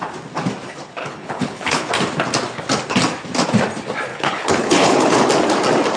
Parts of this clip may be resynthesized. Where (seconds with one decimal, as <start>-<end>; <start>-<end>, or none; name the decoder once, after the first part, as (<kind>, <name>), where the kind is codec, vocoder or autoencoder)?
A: 1.0-1.9 (codec, HILCodec); 4.1-5.3